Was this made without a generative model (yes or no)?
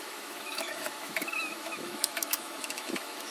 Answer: no